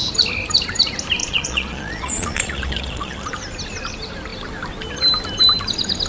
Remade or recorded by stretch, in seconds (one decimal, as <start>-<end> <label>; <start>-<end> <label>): 0.0-1.2 recorded; 1.2-3.3 remade; 3.3-6.1 recorded